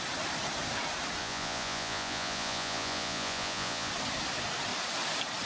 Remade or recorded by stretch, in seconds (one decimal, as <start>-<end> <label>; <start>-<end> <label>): 0.0-1.2 recorded; 1.2-3.9 remade; 3.9-5.5 recorded